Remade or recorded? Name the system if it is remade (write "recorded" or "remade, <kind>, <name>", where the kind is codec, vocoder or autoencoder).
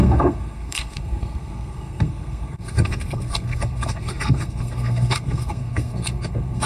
remade, codec, SNAC